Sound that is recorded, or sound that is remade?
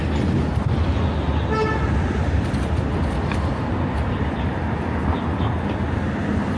recorded